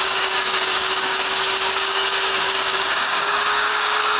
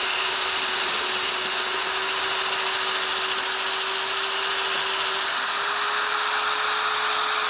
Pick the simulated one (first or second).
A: first